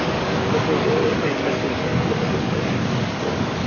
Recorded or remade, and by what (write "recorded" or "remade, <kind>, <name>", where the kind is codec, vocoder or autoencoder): remade, codec, DAC